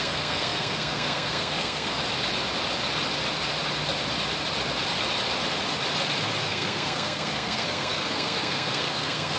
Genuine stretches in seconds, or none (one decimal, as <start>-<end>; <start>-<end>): 2.0-6.4